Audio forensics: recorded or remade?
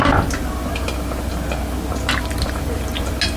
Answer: recorded